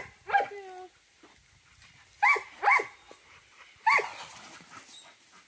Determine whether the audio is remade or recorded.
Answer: recorded